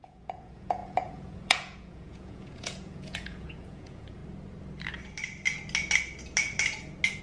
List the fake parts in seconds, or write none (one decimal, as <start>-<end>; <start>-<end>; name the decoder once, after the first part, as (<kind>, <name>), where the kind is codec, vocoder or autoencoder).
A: 0.0-4.2 (vocoder, Vocos)